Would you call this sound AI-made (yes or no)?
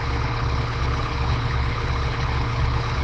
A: yes